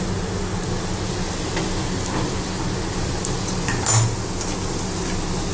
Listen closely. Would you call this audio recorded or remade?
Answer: recorded